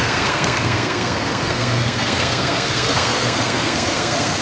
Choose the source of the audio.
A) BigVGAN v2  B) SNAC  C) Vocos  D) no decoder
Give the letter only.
B